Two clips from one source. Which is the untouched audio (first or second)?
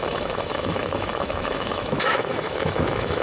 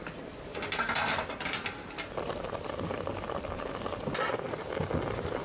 second